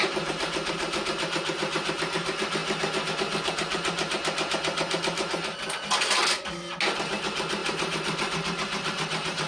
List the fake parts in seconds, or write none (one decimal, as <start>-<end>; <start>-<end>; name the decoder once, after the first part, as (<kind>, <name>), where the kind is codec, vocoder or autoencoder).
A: 6.2-6.8 (vocoder, BigVGAN v2); 7.6-9.5